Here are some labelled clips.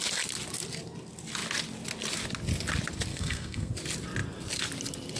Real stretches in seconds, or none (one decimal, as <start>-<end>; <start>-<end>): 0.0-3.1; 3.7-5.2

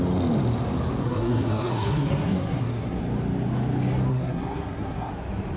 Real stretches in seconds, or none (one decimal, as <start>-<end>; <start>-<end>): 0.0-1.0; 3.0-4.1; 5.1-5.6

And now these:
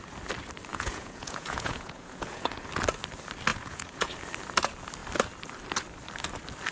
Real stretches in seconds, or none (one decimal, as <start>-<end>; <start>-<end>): 0.0-0.7; 2.6-3.5; 4.1-6.7

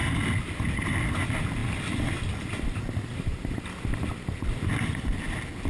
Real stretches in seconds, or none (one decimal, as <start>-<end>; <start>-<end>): 0.0-5.7

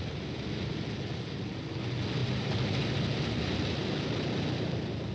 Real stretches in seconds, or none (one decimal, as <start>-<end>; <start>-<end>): 0.0-5.1

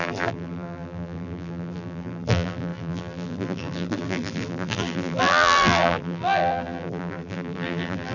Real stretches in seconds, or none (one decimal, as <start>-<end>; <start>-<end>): none

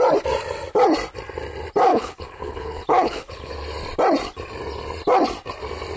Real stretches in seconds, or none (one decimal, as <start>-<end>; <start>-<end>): 0.0-1.9; 3.5-6.0